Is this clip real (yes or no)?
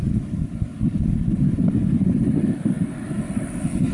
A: yes